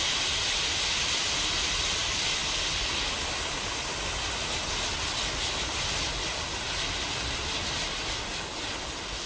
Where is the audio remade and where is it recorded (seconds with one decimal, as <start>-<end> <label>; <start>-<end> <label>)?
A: 0.0-9.3 recorded